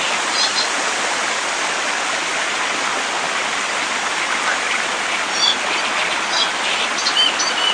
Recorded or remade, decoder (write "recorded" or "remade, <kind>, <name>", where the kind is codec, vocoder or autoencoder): recorded